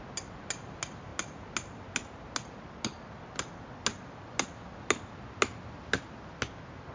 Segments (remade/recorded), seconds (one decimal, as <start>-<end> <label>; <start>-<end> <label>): 0.0-6.9 recorded